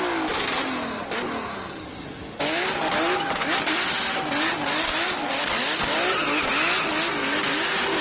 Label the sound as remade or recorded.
recorded